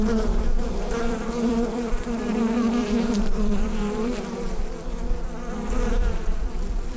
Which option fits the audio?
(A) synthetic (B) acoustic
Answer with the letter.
A